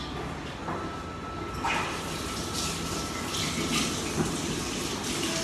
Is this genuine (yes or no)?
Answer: yes